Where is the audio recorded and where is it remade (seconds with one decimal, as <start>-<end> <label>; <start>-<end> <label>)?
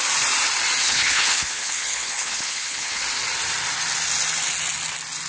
0.0-0.8 recorded; 0.8-3.0 remade; 3.0-5.3 recorded